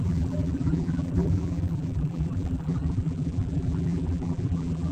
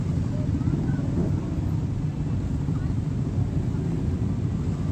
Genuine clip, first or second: second